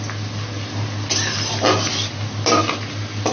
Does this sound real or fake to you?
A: real